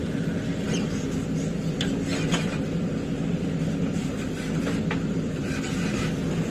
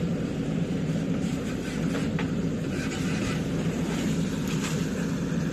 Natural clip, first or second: first